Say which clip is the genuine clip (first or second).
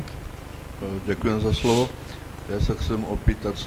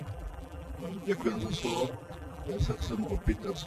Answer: first